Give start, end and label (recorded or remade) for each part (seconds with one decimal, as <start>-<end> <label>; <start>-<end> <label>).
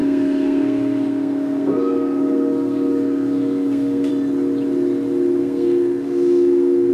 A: 0.0-4.1 remade; 4.1-5.4 recorded; 5.4-6.9 remade